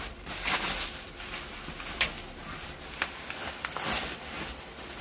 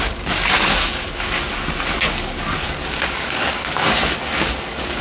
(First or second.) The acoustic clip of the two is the first